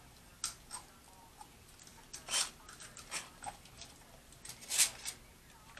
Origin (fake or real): real